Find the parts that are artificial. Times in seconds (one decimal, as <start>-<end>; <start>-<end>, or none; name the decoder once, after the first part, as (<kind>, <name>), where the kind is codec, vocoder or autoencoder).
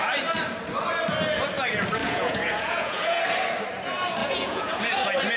2.0-3.2 (vocoder, Vocos); 4.2-4.8